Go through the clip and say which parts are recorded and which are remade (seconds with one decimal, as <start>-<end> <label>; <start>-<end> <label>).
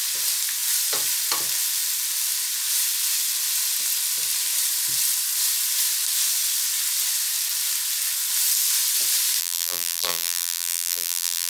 0.0-9.4 recorded; 9.4-11.5 remade